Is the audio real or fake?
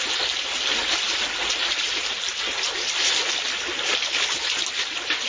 real